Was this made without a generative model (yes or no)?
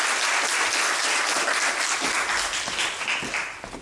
yes